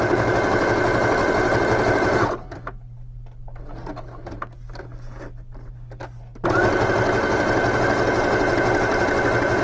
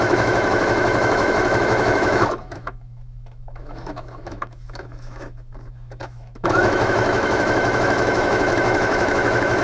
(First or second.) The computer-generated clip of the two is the second